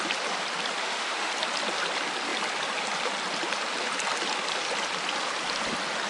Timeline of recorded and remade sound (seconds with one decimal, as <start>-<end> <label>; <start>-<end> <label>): 0.0-0.8 recorded; 0.8-1.3 remade; 1.3-6.1 recorded